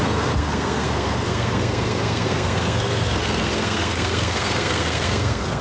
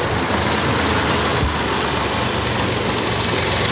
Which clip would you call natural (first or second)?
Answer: second